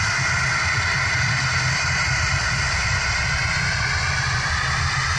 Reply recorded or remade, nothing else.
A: recorded